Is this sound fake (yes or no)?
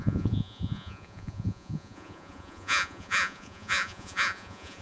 yes